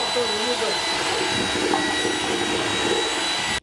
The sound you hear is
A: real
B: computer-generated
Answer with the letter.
A